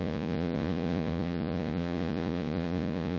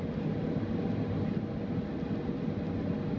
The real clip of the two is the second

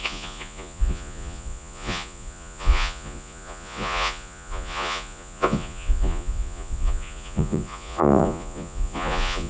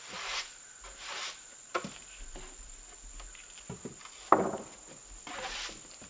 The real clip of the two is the second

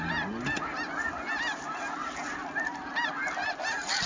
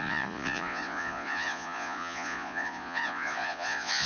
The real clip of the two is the first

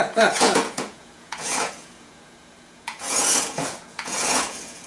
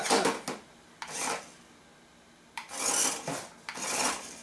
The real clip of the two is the second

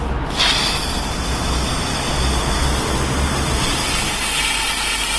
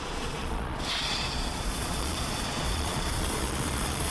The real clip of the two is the first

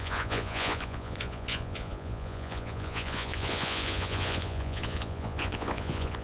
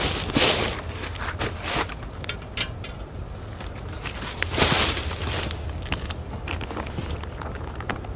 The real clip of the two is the second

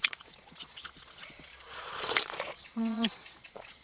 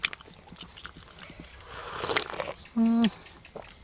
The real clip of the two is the second